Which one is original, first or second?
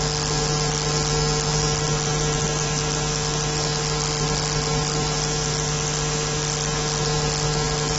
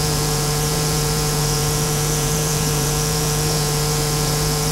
first